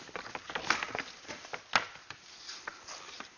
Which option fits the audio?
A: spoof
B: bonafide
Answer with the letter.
B